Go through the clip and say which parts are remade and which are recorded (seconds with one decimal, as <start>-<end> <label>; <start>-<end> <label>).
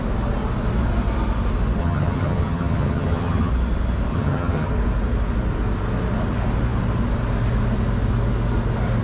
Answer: 0.0-1.8 recorded; 1.8-3.5 remade; 3.5-4.1 recorded; 4.1-4.7 remade; 4.7-9.0 recorded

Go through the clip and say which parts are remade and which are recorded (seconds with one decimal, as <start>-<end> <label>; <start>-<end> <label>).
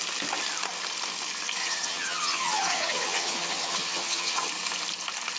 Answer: 0.0-1.6 recorded; 1.6-4.5 remade; 4.5-5.4 recorded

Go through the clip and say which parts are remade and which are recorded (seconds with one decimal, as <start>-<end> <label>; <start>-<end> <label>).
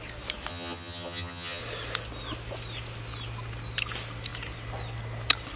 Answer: 0.0-0.5 recorded; 0.5-1.6 remade; 1.6-5.6 recorded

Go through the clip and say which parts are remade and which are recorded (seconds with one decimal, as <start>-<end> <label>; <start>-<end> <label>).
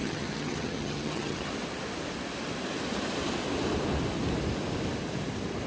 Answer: 0.0-1.5 remade; 1.5-5.7 recorded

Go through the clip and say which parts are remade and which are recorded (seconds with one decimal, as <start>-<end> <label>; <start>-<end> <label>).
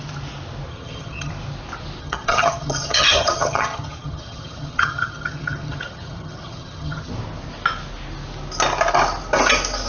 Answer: 0.0-0.7 recorded; 0.7-1.3 remade; 1.3-2.0 recorded; 2.0-7.1 remade; 7.1-9.9 recorded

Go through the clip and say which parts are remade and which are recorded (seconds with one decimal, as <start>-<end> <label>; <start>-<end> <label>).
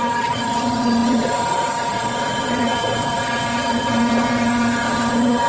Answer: 0.0-5.5 remade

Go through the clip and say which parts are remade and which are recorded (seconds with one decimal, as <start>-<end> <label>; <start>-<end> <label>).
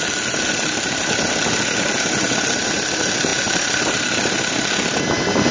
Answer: 0.0-5.5 recorded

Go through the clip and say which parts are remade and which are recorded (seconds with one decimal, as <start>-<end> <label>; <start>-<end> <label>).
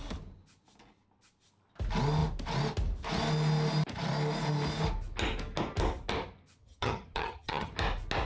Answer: 0.0-6.6 recorded; 6.6-7.7 remade; 7.7-8.3 recorded